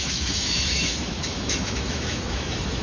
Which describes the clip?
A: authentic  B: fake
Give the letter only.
B